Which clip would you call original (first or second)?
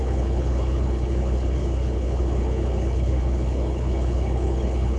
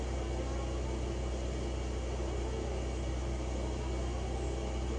second